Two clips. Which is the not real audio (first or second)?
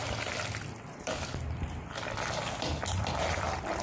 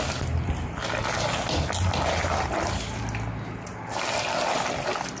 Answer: first